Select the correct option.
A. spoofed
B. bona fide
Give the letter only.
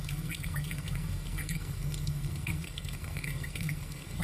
A